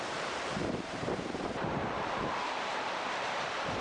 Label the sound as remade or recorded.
remade